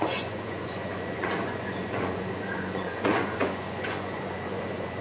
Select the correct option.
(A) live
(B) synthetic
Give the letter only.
B